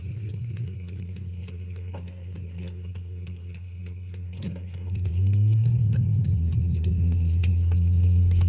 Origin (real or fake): fake